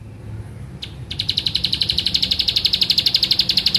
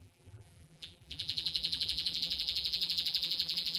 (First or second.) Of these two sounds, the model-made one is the second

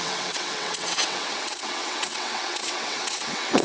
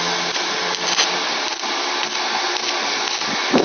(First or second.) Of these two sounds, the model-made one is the first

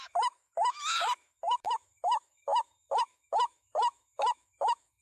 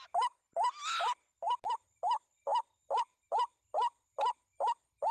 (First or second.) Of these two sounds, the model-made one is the first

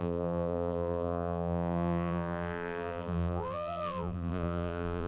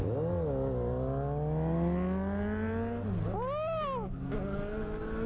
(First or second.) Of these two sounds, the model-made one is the first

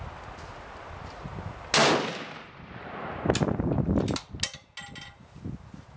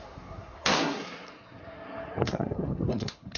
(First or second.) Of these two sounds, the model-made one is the second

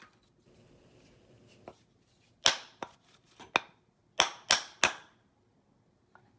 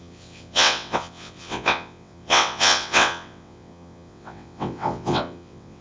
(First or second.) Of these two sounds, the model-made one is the second